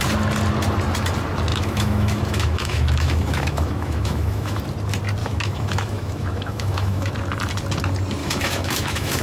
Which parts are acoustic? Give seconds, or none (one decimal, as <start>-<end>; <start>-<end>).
0.0-1.5; 4.6-5.2; 7.1-8.2